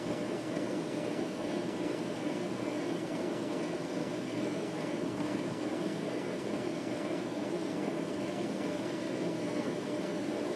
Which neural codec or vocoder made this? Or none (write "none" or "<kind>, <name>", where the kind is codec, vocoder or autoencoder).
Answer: codec, SNAC